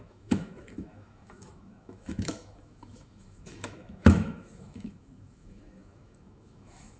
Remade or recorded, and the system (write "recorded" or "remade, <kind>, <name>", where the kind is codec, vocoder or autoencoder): remade, autoencoder, DAC-VAE